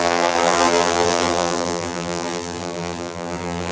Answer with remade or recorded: remade